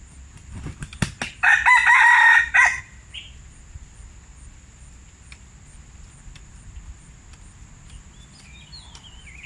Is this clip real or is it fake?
real